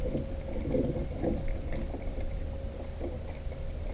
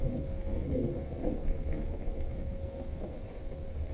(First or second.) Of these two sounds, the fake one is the second